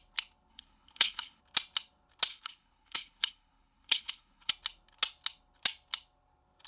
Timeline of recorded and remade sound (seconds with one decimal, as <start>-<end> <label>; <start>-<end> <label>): 0.0-0.5 recorded; 0.5-1.4 remade; 1.4-2.3 recorded; 2.3-4.5 remade; 4.5-6.7 recorded